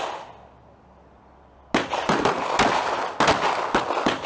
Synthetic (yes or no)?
no